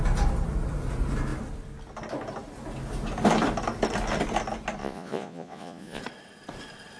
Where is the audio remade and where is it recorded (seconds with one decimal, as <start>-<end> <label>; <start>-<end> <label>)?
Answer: 0.0-4.8 recorded; 4.8-6.0 remade; 6.0-7.0 recorded